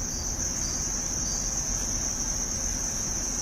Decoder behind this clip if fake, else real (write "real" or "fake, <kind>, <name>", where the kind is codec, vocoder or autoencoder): real